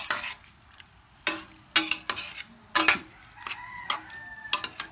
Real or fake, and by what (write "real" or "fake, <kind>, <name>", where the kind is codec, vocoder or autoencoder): real